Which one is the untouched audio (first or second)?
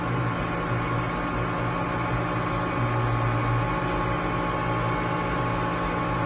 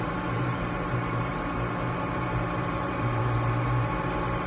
first